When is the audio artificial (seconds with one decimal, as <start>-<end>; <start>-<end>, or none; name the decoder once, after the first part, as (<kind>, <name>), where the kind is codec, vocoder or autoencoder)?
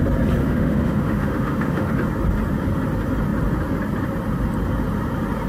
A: 0.4-1.9 (autoencoder, DAC-VAE)